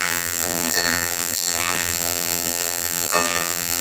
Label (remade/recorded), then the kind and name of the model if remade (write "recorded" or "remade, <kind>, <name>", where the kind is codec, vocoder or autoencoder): remade, vocoder, BigVGAN v2